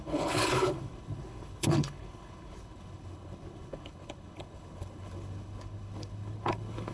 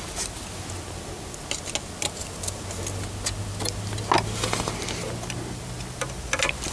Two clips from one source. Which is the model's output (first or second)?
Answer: first